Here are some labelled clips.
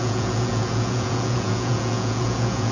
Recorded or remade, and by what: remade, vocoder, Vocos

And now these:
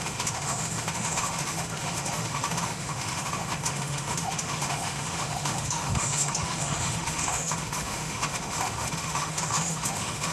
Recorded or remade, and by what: remade, autoencoder, DAC-VAE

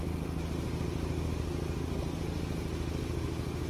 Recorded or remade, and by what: recorded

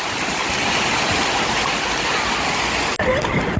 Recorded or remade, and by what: recorded